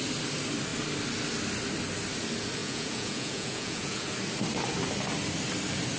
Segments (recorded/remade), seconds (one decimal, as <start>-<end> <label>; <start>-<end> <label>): 0.0-2.6 recorded; 2.6-4.1 remade; 4.1-6.0 recorded